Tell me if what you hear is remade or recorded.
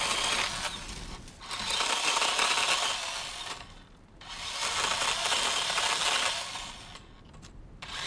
recorded